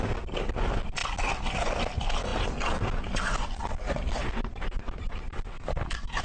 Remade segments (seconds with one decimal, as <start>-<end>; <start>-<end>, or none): none